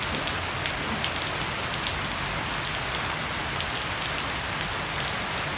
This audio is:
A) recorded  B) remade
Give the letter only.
A